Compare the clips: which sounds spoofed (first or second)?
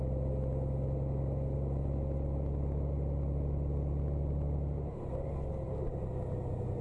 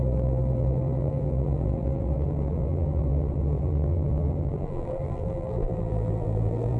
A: second